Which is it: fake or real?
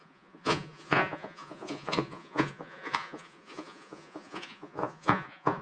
fake